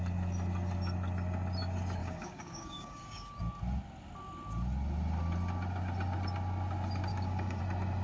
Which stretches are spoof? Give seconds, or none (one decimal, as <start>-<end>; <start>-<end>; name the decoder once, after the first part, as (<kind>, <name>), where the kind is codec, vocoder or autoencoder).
2.0-3.4 (codec, DAC); 7.1-7.6